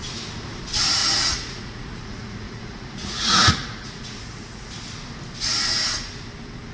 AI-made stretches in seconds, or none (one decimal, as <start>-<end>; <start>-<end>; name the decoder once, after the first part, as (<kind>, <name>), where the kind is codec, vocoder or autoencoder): 1.0-4.7 (vocoder, Vocos)